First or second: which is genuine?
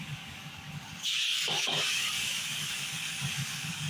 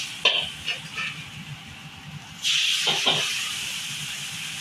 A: second